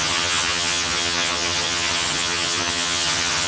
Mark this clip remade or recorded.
remade